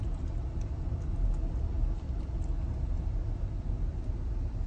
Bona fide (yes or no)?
yes